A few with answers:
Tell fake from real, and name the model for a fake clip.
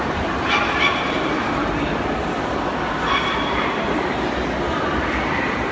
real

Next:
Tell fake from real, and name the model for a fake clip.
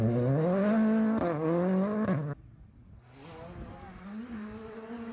real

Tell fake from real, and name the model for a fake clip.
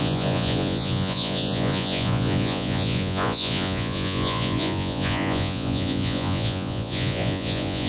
fake, vocoder, Vocos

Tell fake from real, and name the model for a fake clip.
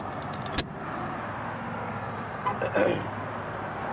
real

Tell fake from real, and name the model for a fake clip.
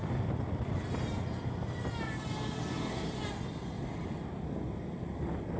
real